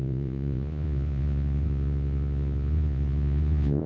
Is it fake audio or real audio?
fake